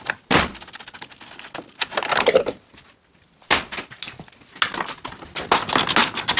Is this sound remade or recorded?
recorded